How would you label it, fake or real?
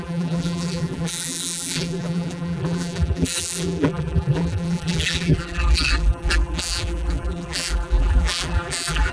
fake